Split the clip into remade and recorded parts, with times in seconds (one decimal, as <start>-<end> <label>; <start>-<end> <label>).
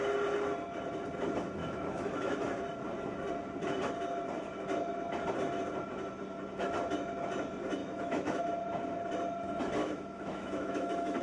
0.0-1.6 recorded; 1.6-2.5 remade; 2.5-7.8 recorded; 7.8-8.4 remade; 8.4-9.8 recorded; 9.8-11.2 remade